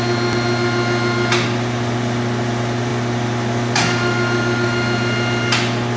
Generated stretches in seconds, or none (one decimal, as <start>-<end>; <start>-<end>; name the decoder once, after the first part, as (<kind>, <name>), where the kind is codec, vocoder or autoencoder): none